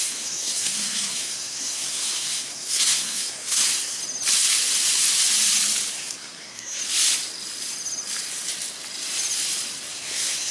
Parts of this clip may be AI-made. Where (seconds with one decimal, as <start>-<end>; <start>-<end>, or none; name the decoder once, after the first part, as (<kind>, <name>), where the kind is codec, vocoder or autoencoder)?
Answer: 0.0-4.0 (codec, SNAC); 5.9-6.8; 9.9-10.5